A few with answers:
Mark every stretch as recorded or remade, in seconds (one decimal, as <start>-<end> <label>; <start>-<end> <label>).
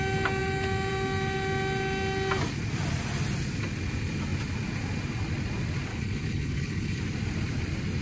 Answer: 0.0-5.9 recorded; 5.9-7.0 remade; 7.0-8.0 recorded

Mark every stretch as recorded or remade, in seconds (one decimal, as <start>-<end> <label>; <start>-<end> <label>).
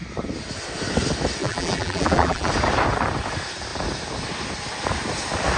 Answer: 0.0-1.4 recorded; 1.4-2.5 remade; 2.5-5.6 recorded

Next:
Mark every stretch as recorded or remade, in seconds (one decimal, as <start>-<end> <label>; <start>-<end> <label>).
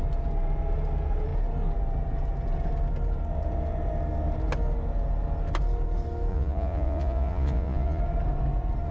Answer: 0.0-6.3 recorded; 6.3-8.0 remade; 8.0-8.9 recorded